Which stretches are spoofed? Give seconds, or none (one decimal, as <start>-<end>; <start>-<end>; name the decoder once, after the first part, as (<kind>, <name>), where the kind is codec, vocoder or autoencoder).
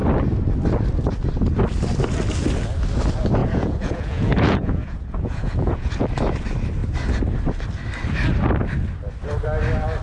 3.4-5.9 (vocoder, Vocos)